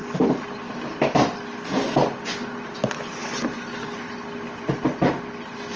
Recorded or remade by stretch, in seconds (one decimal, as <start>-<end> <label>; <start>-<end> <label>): 0.0-5.8 recorded